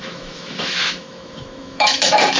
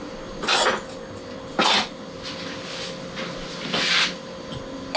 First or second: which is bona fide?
second